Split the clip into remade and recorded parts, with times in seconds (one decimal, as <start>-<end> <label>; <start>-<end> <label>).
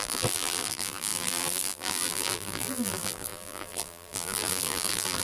0.0-5.2 remade